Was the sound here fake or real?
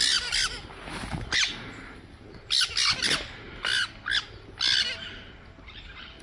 real